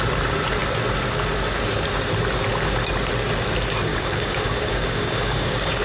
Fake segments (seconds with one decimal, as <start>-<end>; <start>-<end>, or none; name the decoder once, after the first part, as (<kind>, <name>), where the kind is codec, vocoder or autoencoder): 3.9-5.8 (codec, DAC)